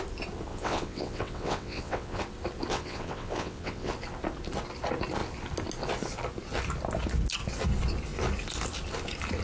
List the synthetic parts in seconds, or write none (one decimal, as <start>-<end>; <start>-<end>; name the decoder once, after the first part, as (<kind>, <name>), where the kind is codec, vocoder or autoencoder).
0.5-2.2 (vocoder, WaveNeXt); 2.7-3.9